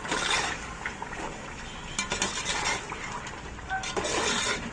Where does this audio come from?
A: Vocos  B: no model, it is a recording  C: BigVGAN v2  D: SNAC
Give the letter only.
B